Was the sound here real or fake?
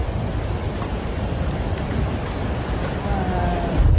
real